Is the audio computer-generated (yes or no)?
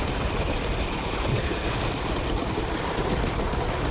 no